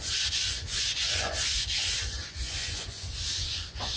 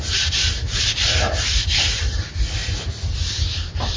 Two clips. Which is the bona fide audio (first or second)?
second